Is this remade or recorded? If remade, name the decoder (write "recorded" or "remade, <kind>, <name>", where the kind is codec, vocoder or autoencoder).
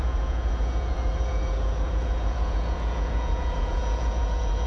remade, vocoder, Vocos